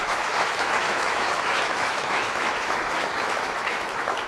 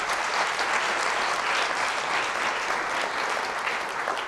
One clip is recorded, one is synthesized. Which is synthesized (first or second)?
first